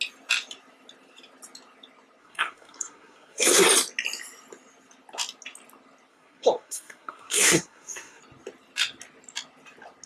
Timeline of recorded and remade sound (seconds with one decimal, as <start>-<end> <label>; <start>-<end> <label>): 0.0-2.2 recorded; 2.2-3.6 remade; 3.6-6.1 recorded; 6.1-8.2 remade; 8.2-10.1 recorded